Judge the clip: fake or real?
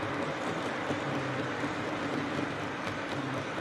real